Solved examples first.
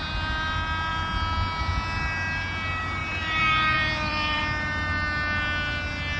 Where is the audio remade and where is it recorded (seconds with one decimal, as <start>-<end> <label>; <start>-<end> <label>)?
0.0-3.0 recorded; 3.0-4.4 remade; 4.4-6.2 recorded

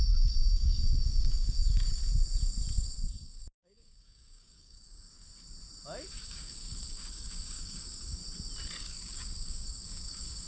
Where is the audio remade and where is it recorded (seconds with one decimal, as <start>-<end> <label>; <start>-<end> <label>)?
0.0-2.0 remade; 2.0-2.8 recorded; 2.8-5.3 remade; 5.3-6.1 recorded; 6.1-8.2 remade; 8.2-8.8 recorded; 8.8-10.5 remade

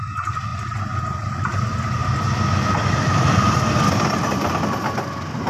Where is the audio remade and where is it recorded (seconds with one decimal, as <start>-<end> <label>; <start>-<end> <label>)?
0.0-5.5 recorded

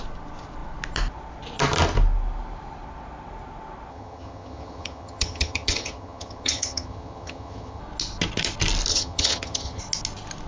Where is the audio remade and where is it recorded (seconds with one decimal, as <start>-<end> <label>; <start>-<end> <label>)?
0.0-3.9 recorded; 3.9-7.8 remade; 7.8-8.9 recorded; 8.9-9.8 remade; 9.8-10.5 recorded

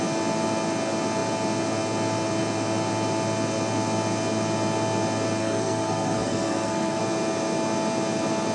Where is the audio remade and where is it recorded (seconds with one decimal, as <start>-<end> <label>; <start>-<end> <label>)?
0.0-5.4 recorded; 5.4-7.0 remade; 7.0-8.5 recorded